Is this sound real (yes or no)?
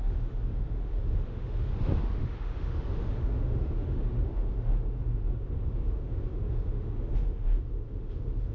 no